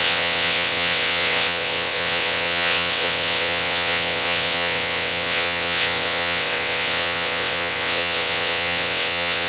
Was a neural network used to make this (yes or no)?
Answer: yes